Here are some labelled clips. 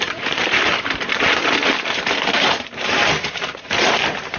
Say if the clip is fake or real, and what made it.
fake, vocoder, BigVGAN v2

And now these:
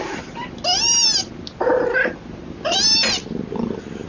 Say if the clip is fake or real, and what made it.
real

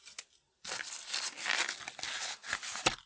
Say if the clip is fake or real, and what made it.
real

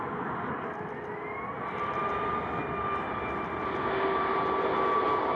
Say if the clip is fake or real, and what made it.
real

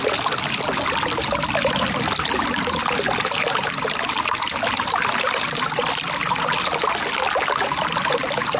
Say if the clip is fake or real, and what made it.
real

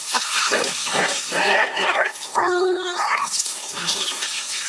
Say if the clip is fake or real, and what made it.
fake, codec, SNAC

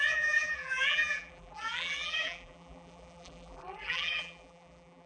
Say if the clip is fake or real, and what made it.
fake, vocoder, BigVGAN v2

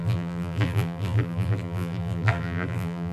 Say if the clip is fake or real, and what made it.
fake, vocoder, BigVGAN v2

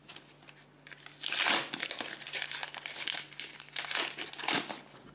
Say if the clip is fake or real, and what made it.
real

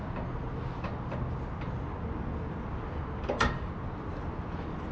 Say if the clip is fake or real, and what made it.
real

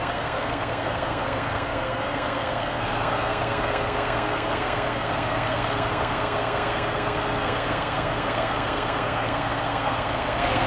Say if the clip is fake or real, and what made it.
fake, codec, SNAC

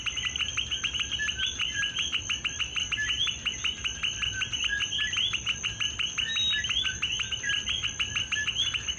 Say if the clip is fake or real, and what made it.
real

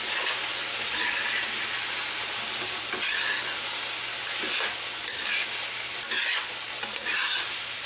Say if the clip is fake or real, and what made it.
real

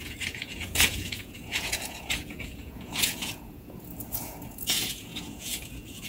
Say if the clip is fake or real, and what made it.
fake, vocoder, Vocos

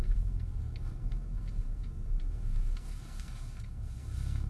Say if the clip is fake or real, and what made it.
fake, codec, SNAC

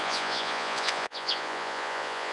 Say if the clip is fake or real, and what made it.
fake, vocoder, Vocos